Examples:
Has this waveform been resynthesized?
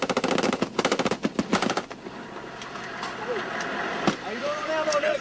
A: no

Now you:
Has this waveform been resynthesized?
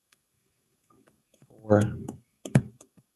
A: yes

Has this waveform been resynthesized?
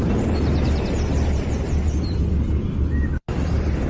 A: no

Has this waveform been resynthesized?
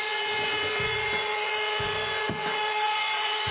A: yes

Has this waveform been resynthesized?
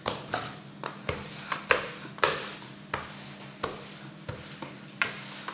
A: no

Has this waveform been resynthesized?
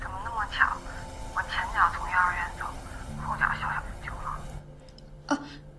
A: no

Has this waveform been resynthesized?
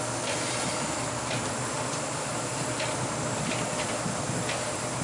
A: no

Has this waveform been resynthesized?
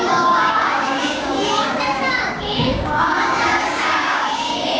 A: yes